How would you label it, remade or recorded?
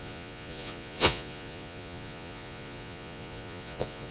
remade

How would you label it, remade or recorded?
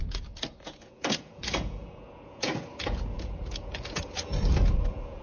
remade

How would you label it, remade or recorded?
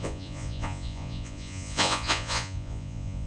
remade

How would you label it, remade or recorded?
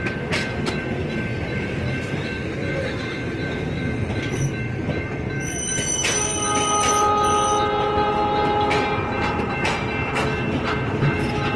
recorded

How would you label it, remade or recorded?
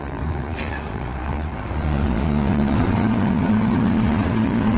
remade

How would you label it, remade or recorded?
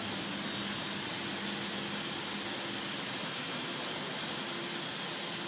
recorded